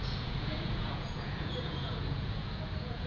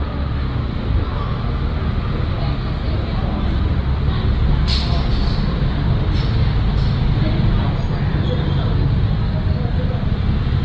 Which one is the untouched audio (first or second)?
second